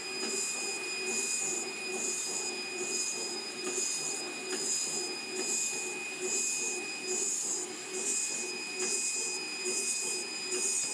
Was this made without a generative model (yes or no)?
yes